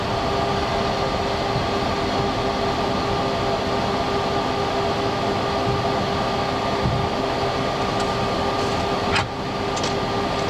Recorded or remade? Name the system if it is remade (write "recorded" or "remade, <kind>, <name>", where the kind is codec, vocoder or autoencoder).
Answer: recorded